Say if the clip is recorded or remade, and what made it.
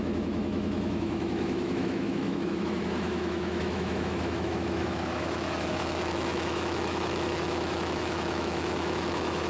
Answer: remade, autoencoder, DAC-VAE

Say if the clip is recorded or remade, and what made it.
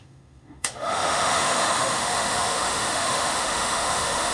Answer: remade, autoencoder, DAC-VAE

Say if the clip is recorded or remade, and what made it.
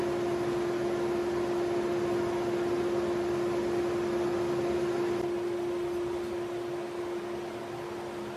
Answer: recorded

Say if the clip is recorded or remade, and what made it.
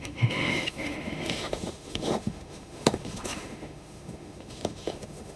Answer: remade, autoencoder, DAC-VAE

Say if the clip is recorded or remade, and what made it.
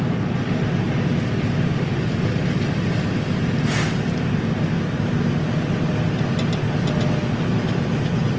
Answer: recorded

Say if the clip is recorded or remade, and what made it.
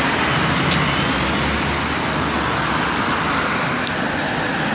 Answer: recorded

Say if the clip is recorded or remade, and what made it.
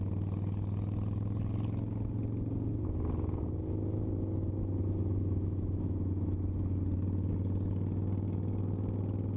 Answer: recorded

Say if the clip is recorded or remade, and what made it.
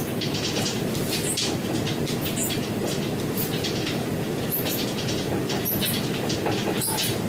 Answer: recorded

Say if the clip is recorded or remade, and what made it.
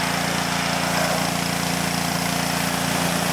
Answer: recorded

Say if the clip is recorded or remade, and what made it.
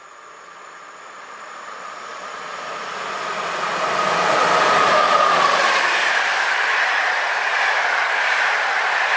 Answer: recorded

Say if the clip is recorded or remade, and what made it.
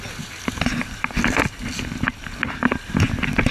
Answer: recorded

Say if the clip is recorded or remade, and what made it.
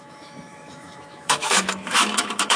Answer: remade, autoencoder, DAC-VAE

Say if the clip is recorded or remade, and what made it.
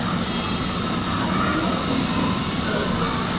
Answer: recorded